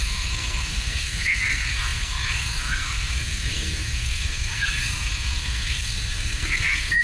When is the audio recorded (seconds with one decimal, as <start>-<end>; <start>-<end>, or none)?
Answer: none